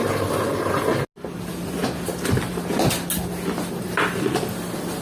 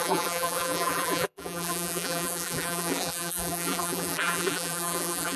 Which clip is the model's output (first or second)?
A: second